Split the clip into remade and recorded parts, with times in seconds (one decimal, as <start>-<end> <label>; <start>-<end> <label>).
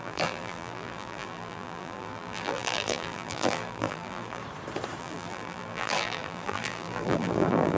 0.0-4.4 remade; 4.4-5.0 recorded; 5.0-7.8 remade